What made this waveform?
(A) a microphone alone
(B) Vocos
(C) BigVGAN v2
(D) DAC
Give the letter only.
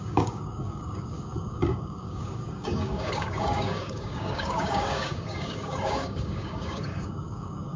D